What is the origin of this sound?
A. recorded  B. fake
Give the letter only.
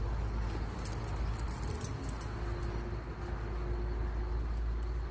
A